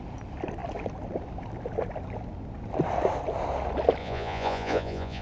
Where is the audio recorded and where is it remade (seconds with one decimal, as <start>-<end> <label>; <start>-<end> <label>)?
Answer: 0.0-4.0 recorded; 4.0-5.2 remade